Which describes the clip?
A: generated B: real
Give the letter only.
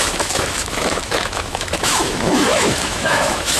A